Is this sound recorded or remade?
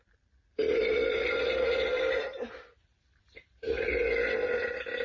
recorded